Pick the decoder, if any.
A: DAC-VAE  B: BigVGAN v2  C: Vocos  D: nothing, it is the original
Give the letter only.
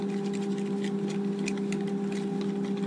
D